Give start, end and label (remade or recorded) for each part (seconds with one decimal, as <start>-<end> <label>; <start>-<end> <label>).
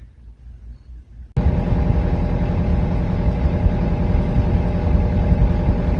0.0-2.7 recorded; 2.7-3.4 remade; 3.4-6.0 recorded